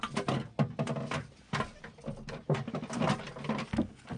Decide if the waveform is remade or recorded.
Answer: recorded